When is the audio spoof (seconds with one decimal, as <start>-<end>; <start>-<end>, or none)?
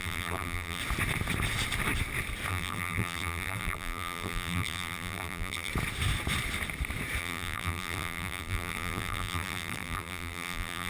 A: 0.0-0.8; 2.5-5.7; 7.2-10.9